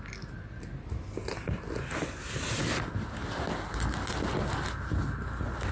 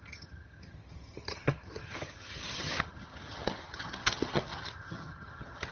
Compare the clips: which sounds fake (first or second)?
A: second